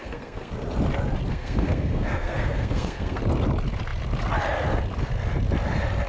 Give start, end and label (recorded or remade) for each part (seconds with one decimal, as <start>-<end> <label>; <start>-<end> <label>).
0.0-0.5 remade; 0.5-1.3 recorded; 1.3-3.2 remade; 3.2-6.1 recorded